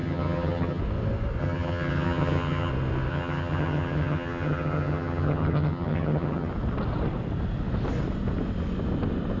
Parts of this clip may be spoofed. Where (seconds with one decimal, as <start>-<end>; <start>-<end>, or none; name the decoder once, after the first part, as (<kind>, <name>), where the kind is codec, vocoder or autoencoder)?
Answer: 0.0-0.8 (vocoder, HiFi-GAN); 1.4-2.7; 3.1-6.5